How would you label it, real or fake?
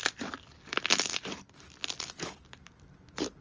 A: real